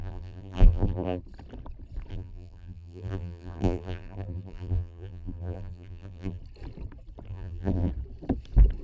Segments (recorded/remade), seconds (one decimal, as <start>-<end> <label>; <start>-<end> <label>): 0.0-1.2 remade; 1.2-2.1 recorded; 2.1-6.4 remade; 6.4-7.3 recorded; 7.3-7.9 remade; 7.9-8.8 recorded